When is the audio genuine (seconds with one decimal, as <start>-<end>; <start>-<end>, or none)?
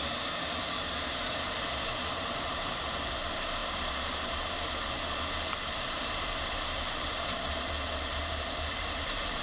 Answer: none